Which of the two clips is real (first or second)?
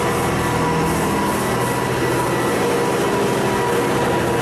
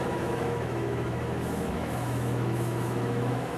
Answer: first